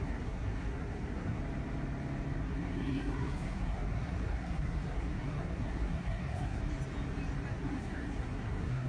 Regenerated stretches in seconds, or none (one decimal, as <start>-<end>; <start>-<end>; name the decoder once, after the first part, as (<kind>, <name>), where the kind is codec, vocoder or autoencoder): 0.0-1.4 (codec, SNAC); 2.4-6.6; 7.5-8.9